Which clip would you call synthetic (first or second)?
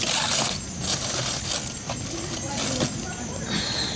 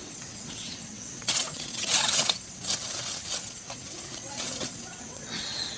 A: second